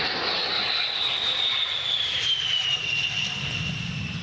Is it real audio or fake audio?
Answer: real